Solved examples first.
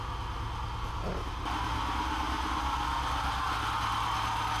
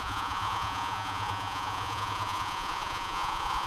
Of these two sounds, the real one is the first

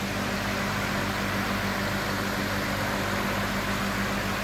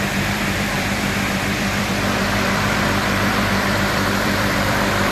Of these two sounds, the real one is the first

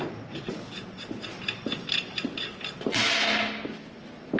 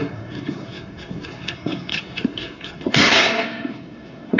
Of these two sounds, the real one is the first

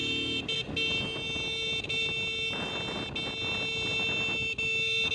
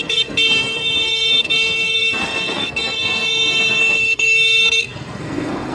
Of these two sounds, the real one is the first